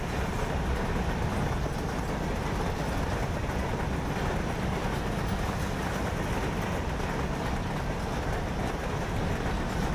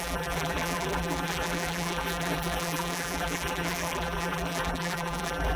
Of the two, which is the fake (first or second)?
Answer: second